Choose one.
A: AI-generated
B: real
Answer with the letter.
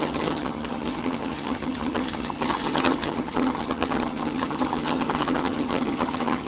A